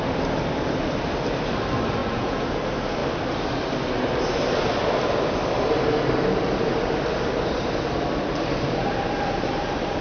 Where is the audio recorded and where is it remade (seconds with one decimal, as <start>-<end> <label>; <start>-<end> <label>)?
0.0-2.0 recorded; 2.0-2.6 remade; 2.6-10.0 recorded